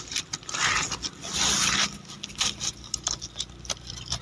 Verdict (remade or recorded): recorded